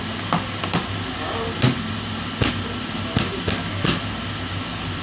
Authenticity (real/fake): real